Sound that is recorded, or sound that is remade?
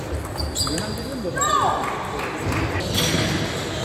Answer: recorded